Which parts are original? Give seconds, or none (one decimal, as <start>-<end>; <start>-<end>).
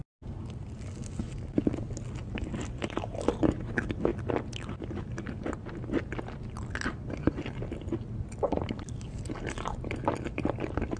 0.0-11.0